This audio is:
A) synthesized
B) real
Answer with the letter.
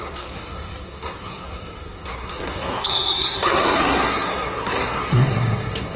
A